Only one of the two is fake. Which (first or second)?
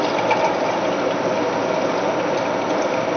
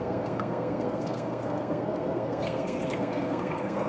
second